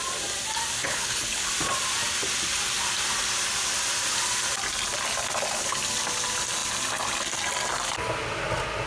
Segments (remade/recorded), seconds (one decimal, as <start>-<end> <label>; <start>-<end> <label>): 0.0-0.8 recorded; 0.8-1.5 remade; 1.5-8.9 recorded

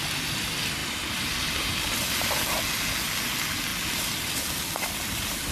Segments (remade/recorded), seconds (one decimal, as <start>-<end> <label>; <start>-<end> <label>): 0.0-0.8 recorded; 0.8-2.3 remade; 2.3-5.5 recorded